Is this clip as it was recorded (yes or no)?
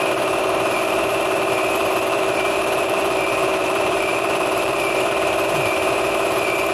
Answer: no